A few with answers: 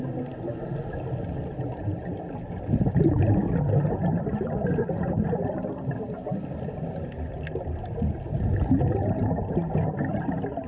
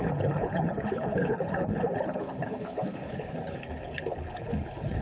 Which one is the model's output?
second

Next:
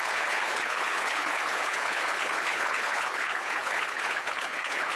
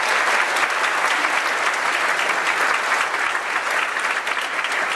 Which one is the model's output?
first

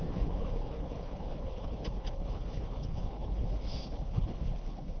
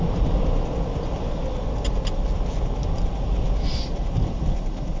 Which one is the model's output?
first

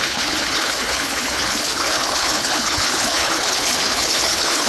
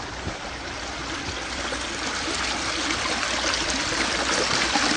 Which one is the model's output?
first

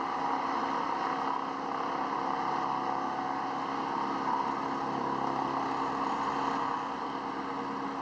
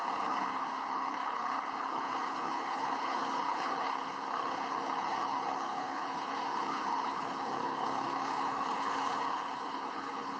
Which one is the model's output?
second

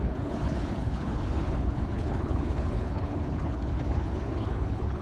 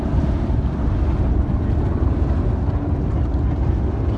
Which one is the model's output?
first